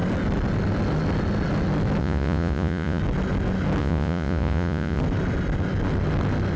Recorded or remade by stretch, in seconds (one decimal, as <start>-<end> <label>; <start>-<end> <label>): 0.0-2.0 recorded; 2.0-3.0 remade; 3.0-3.8 recorded; 3.8-5.0 remade; 5.0-6.6 recorded